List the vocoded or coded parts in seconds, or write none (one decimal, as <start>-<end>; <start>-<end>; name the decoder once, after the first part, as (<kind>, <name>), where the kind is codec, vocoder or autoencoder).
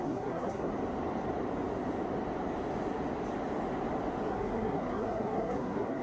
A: 0.0-0.7 (codec, SNAC); 4.3-6.0